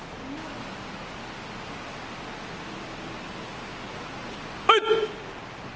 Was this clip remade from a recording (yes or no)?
no